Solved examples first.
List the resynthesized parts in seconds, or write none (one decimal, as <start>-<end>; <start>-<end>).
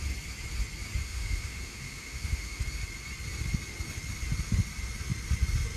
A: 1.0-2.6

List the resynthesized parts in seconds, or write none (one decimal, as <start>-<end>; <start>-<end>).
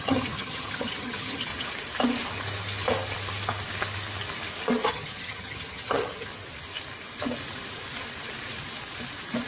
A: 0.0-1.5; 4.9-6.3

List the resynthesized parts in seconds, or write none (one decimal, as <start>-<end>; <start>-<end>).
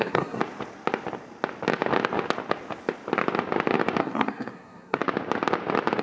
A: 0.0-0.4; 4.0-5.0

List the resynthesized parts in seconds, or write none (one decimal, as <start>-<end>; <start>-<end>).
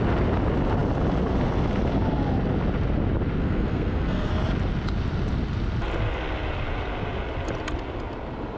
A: 3.4-4.3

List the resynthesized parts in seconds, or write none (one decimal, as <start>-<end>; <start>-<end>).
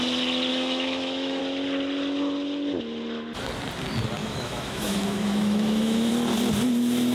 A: 0.5-1.4; 4.2-6.1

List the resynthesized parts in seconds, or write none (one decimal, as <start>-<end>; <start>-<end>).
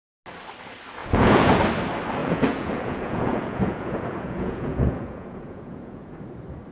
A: 1.0-1.6; 2.2-6.2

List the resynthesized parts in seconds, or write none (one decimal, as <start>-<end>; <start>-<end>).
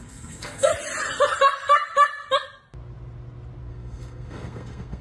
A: 0.0-0.7; 3.7-5.0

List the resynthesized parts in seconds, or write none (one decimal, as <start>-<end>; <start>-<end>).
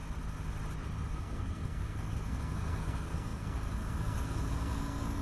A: 1.1-5.2